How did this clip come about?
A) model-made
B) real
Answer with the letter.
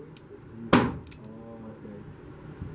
B